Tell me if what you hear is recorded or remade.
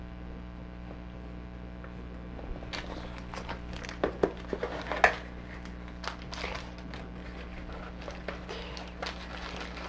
recorded